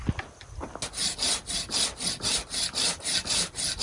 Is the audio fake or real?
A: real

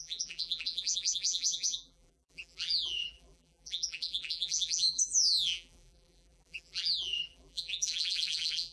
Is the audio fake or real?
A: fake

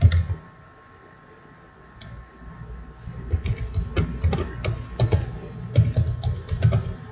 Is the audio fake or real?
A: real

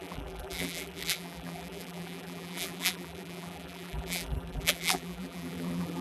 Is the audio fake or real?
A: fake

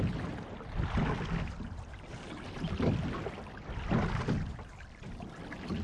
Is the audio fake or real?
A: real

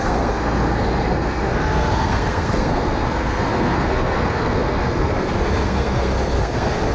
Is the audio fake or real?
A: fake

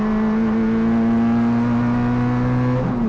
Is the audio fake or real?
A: real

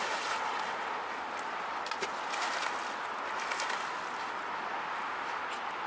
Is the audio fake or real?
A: real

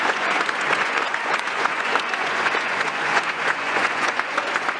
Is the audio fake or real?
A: fake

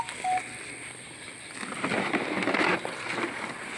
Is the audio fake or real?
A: real